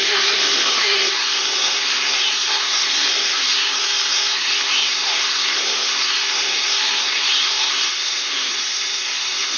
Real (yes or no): no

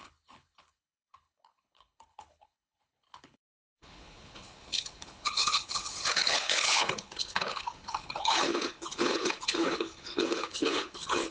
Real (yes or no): no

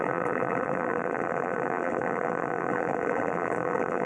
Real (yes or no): no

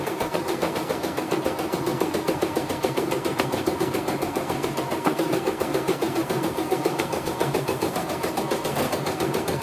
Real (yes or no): no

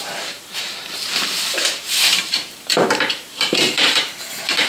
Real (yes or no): no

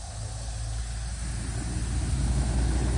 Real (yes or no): yes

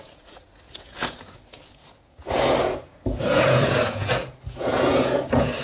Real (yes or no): no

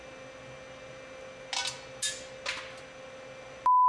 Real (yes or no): yes